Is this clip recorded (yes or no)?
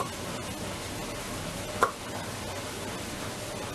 yes